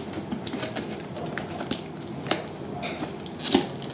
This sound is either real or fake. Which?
real